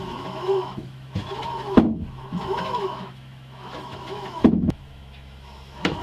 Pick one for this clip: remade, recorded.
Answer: remade